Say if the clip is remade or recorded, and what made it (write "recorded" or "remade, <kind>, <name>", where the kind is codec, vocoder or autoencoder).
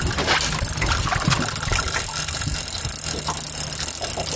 recorded